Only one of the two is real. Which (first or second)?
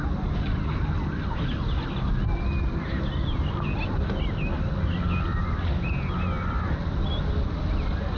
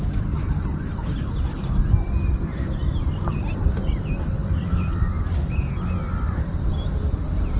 first